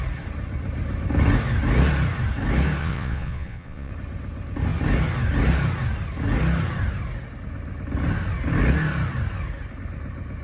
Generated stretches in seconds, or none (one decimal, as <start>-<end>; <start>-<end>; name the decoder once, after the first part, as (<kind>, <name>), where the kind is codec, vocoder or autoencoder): 2.8-3.9 (vocoder, Vocos)